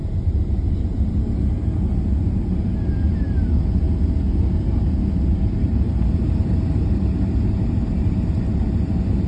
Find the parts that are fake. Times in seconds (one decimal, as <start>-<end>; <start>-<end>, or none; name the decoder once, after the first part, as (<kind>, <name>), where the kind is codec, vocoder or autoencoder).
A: 0.0-0.6 (vocoder, BigVGAN v2); 5.7-8.6

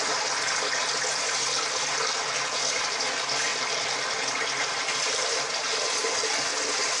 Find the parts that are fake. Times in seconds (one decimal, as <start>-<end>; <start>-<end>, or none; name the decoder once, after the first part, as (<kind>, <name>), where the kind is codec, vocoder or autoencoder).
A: none

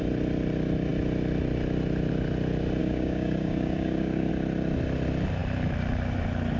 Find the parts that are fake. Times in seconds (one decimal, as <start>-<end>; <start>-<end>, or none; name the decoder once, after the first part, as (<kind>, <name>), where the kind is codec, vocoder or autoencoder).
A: 2.8-4.3 (codec, DAC)

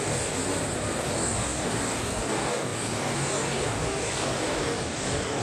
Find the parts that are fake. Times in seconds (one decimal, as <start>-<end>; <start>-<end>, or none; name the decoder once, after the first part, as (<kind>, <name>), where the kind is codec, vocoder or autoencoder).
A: 0.0-0.4 (codec, DAC); 1.0-5.4

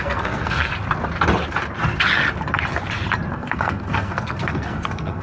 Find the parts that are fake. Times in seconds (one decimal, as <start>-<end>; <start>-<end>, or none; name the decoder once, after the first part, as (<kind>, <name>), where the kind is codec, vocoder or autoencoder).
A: 0.0-0.7 (codec, SNAC); 3.3-5.2